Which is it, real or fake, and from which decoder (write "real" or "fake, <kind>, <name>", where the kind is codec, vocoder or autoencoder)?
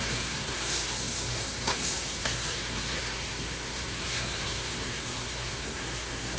fake, codec, SNAC